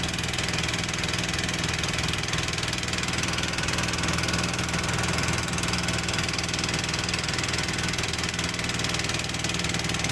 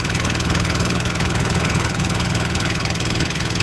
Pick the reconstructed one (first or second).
second